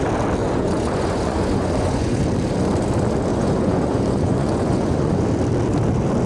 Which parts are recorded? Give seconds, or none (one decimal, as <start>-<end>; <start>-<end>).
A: 0.0-0.4; 2.2-3.3; 5.2-6.3